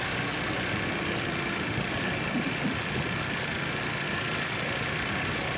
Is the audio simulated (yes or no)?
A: no